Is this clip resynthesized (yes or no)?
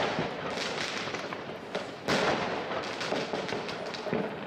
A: no